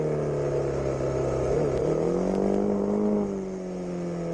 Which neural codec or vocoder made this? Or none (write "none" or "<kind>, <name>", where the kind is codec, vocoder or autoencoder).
none